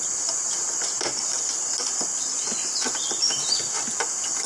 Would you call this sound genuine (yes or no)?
yes